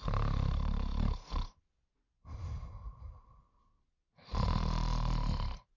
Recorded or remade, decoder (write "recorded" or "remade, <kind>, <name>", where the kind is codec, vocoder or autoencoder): recorded